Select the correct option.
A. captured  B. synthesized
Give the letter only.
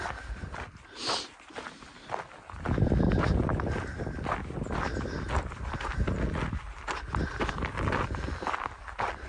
A